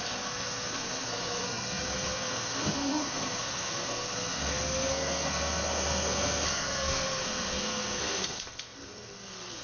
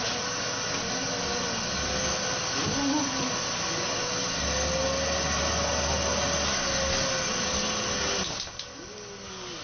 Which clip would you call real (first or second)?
second